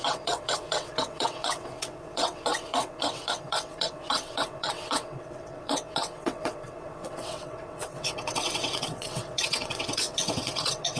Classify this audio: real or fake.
fake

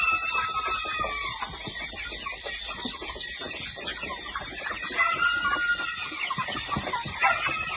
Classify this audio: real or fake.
real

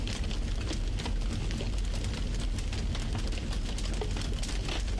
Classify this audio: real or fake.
real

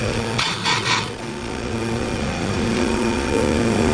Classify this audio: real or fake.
fake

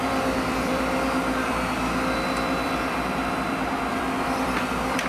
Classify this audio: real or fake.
fake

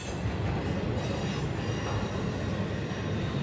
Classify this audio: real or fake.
real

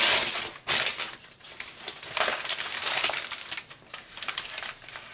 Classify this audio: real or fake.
real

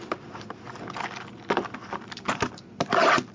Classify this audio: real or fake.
real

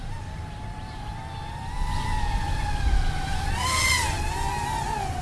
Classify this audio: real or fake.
real